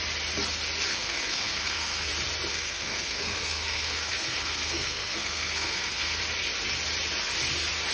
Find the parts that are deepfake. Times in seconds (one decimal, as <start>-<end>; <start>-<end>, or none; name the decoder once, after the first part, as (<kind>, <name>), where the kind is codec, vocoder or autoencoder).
0.9-2.1 (codec, SNAC); 2.5-6.2